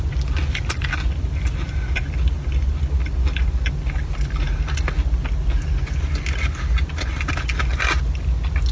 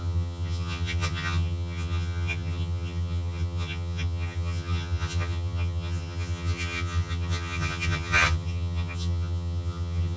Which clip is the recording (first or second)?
first